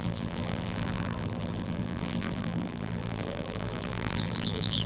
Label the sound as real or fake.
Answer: fake